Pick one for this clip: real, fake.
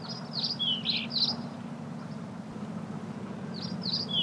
real